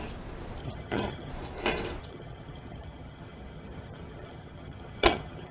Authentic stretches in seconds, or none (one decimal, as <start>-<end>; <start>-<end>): 0.0-0.6; 1.3-2.0